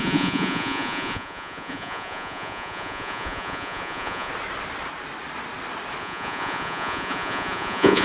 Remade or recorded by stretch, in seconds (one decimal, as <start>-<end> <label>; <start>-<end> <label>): 0.0-4.3 remade; 4.3-6.0 recorded; 6.0-8.0 remade